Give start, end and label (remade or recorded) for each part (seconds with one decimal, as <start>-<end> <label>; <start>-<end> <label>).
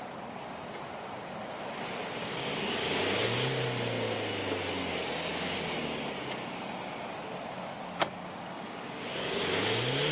0.0-2.0 recorded; 2.0-3.1 remade; 3.1-8.0 recorded; 8.0-9.4 remade; 9.4-10.1 recorded